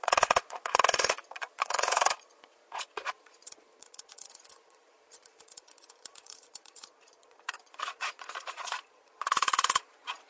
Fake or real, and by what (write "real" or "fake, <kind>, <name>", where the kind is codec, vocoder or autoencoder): fake, vocoder, Vocos